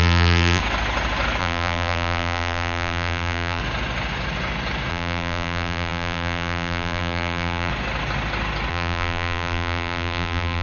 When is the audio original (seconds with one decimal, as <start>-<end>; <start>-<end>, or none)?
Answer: 0.6-1.4; 3.6-4.9; 7.7-8.7